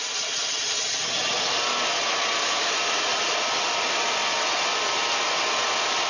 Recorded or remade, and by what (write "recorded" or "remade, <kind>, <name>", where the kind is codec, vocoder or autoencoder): recorded